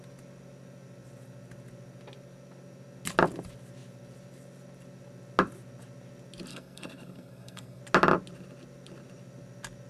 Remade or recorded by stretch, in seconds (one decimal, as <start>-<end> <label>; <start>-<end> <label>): 0.0-6.5 recorded; 6.5-7.8 remade; 7.8-9.9 recorded